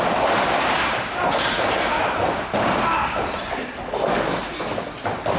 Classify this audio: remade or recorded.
recorded